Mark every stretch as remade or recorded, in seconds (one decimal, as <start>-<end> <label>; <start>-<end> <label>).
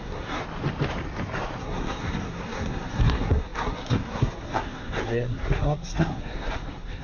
0.0-0.4 remade; 0.4-1.6 recorded; 1.6-7.0 remade